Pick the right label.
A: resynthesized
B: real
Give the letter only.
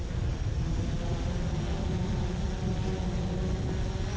B